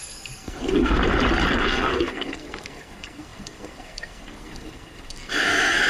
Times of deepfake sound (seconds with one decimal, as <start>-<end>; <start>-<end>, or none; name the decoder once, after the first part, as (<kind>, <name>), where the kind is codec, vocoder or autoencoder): 0.0-1.0 (codec, SNAC); 1.6-5.9